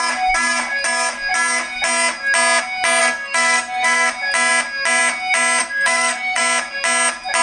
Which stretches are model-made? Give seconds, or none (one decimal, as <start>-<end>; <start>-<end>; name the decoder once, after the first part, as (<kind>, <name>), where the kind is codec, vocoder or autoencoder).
3.0-4.1 (codec, SNAC); 5.6-6.4